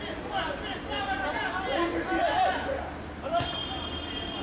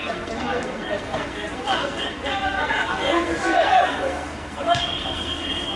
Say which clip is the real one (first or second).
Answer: first